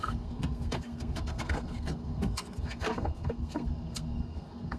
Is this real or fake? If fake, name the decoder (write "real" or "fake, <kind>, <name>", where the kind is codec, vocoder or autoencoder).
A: fake, codec, SNAC